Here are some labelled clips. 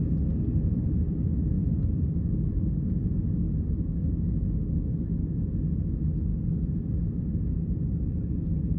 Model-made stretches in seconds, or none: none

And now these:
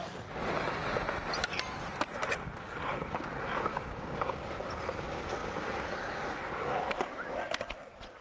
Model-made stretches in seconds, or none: 3.7-4.4 (codec, DAC)

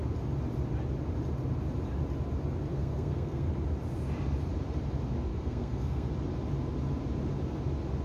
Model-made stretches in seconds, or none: 2.7-3.5 (codec, SNAC); 5.3-6.1

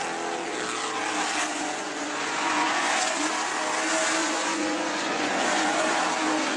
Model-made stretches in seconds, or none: 1.5-3.3 (vocoder, Vocos); 4.2-6.0

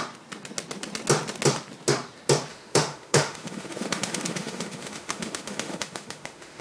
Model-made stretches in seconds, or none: 2.5-6.6 (autoencoder, DAC-VAE)

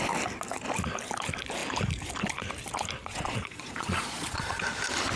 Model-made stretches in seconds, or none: 3.0-4.6 (vocoder, Vocos)

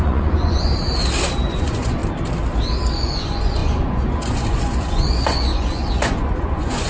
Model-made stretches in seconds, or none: 0.0-0.7 (vocoder, Vocos); 1.5-2.0; 2.9-6.9

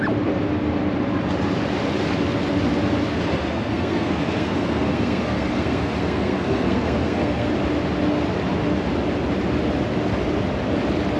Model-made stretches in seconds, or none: 3.1-7.5 (codec, SNAC)